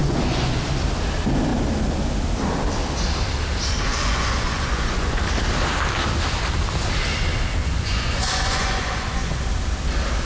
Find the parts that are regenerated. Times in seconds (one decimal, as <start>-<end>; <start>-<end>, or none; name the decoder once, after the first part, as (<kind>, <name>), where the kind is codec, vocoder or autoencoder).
0.0-0.6 (vocoder, Vocos); 3.9-5.2; 7.6-9.4